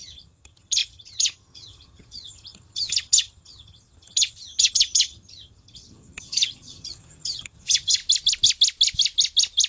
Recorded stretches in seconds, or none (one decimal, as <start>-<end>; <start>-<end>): 8.0-9.7

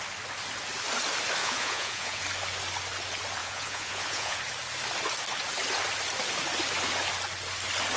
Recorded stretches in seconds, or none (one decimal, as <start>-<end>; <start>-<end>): 0.0-1.4; 2.2-3.4; 4.4-8.0

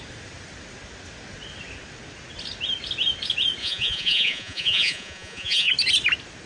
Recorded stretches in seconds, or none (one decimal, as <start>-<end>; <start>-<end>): 0.0-3.6; 5.7-6.5

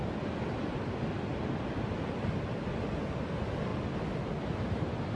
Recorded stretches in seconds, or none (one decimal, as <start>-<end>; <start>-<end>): 0.0-5.2